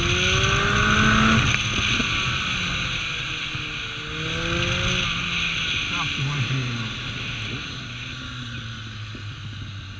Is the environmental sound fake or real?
real